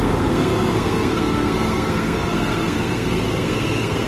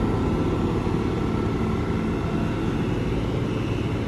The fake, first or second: first